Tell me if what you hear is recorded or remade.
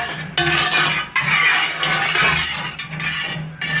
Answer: recorded